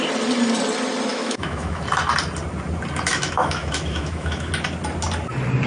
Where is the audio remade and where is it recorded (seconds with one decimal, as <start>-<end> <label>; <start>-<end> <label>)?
0.0-1.1 recorded; 1.1-1.8 remade; 1.8-3.1 recorded; 3.1-4.5 remade; 4.5-5.7 recorded